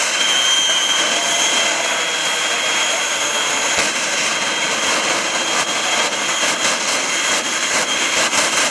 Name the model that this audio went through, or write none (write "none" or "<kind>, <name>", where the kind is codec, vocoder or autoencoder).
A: none